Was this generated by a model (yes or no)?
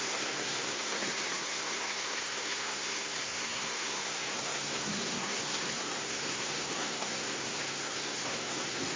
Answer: yes